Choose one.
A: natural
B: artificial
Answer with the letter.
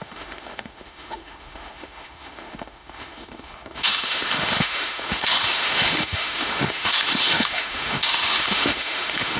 B